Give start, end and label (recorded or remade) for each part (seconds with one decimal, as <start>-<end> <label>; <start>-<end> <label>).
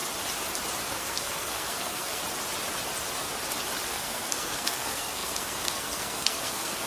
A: 0.0-0.9 recorded; 0.9-2.2 remade; 2.2-3.9 recorded; 3.9-6.9 remade